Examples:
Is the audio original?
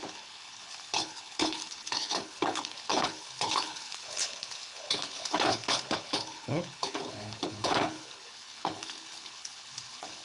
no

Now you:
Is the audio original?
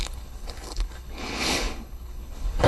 no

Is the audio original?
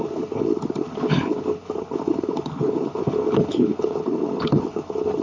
no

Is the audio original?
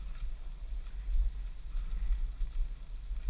yes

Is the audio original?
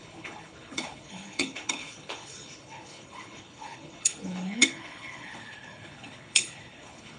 no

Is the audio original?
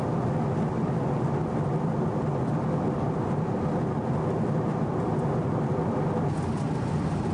yes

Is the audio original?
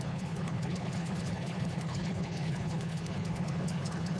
no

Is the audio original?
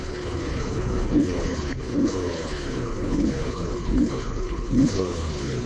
no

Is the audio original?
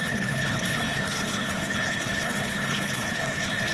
no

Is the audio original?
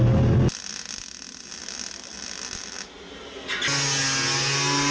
yes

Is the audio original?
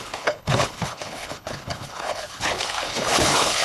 no